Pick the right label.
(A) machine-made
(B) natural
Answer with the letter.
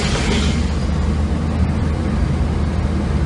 B